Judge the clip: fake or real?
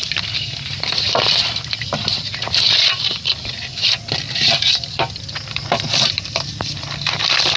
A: fake